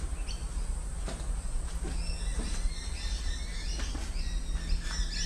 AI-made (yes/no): no